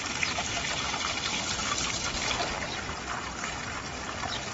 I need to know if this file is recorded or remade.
recorded